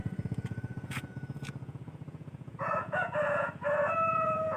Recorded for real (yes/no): no